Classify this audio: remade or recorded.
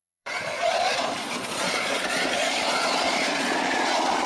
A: remade